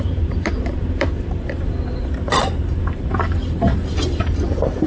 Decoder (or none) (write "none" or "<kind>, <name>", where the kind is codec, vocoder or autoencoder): vocoder, BigVGAN v2